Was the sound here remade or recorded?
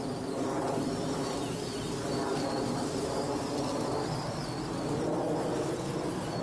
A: recorded